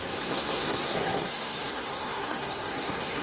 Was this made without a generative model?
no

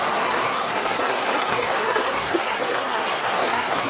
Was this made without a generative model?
no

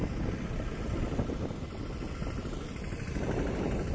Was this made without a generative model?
yes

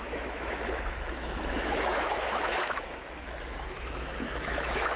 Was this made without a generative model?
no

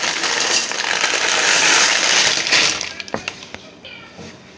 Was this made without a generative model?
yes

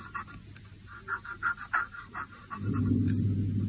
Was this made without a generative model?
yes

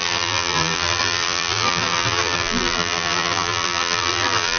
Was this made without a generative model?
no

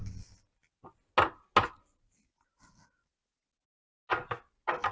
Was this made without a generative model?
yes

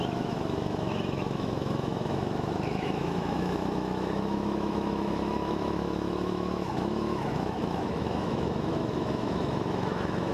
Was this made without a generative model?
no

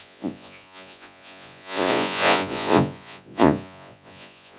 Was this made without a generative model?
no